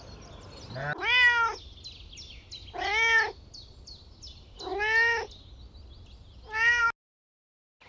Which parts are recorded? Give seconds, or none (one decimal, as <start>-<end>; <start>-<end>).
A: 0.0-7.9